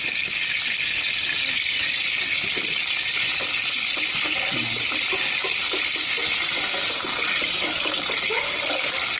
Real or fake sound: real